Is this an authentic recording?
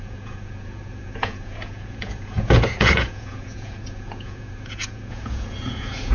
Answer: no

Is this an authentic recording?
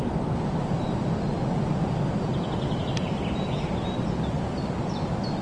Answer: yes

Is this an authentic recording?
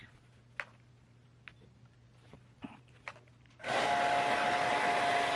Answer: yes